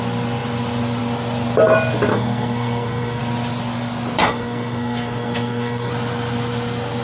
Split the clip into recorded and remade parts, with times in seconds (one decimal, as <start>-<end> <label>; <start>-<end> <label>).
0.0-2.1 recorded; 2.1-3.2 remade; 3.2-4.2 recorded; 4.2-5.9 remade; 5.9-7.0 recorded